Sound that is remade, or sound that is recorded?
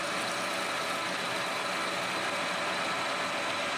recorded